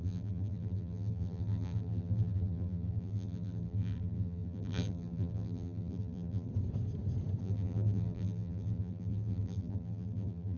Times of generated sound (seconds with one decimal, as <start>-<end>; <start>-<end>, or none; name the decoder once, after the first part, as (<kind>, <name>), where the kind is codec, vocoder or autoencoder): 0.0-6.5 (vocoder, BigVGAN v2); 7.4-10.6